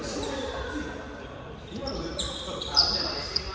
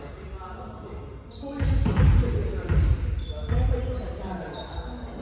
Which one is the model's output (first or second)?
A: first